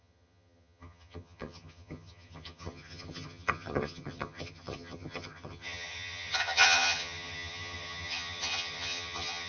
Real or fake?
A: fake